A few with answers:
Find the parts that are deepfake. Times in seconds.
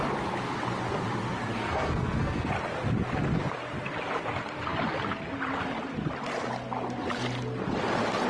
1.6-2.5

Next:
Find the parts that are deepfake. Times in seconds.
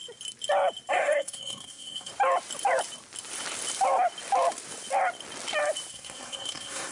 0.9-2.1; 5.9-6.9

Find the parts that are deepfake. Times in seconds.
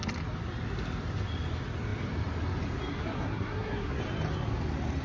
2.9-4.0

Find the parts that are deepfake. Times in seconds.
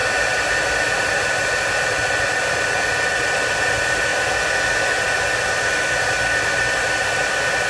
none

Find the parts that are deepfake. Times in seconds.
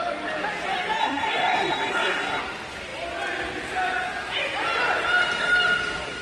1.0-2.4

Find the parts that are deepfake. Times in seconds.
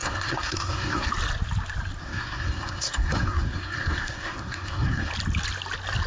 0.0-1.1; 2.0-5.1